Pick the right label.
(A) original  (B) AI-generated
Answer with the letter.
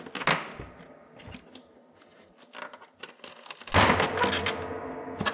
A